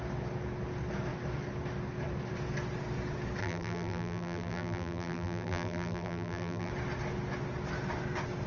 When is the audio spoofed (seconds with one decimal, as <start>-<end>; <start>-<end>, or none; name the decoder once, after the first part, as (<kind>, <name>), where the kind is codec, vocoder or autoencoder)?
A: 3.4-6.7 (vocoder, BigVGAN v2)